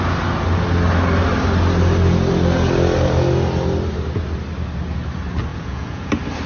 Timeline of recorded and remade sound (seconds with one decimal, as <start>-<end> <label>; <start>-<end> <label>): 0.0-5.5 recorded; 5.5-6.1 remade; 6.1-6.5 recorded

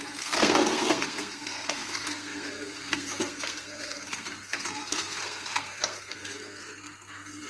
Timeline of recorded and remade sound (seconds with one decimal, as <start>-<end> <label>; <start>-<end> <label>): 0.0-7.5 remade

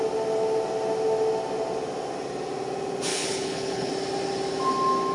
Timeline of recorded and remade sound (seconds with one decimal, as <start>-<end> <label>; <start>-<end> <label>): 0.0-3.1 recorded; 3.1-3.9 remade; 3.9-5.1 recorded

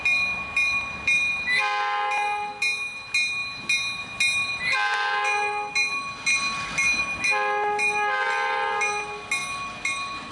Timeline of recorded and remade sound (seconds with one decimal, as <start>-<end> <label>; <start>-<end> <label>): 0.0-10.3 recorded

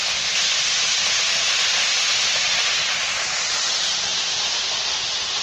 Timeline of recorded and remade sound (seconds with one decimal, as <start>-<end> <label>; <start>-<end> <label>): 0.0-5.4 recorded

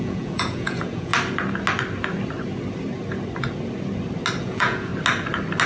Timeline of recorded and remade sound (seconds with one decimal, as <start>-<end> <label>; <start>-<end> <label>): 0.0-1.1 remade; 1.1-4.4 recorded; 4.4-4.9 remade; 4.9-5.7 recorded

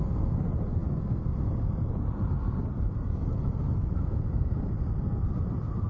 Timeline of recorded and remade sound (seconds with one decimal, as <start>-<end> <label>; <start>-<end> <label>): 0.0-5.9 recorded

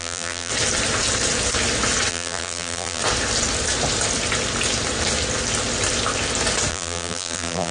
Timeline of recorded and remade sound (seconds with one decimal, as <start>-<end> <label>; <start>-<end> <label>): 0.0-0.5 remade; 0.5-2.1 recorded; 2.1-3.0 remade; 3.0-6.7 recorded; 6.7-7.7 remade